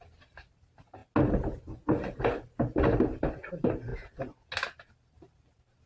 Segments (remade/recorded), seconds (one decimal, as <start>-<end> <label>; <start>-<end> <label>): 0.0-1.0 remade; 1.0-3.5 recorded; 3.5-3.9 remade; 3.9-4.9 recorded; 4.9-5.9 remade